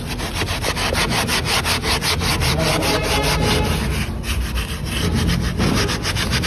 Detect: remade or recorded recorded